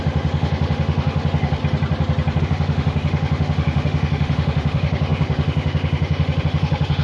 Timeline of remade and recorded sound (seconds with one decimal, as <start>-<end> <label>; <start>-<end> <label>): 0.0-1.6 remade; 1.6-2.4 recorded; 2.4-7.0 remade